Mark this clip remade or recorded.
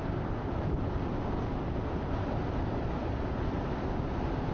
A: recorded